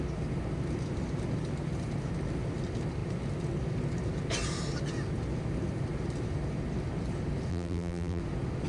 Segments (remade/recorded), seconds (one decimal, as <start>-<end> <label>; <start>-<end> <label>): 0.0-7.5 recorded; 7.5-8.2 remade; 8.2-8.7 recorded